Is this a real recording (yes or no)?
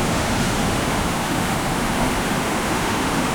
no